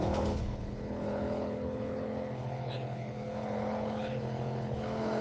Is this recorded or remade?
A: remade